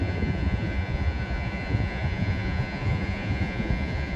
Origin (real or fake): fake